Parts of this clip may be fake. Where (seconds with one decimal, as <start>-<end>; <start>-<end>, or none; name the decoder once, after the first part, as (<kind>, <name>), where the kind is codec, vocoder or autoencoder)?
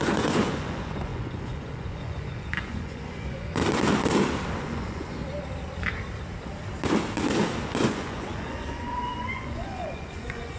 0.0-3.6 (vocoder, Vocos); 4.6-5.2; 7.8-10.6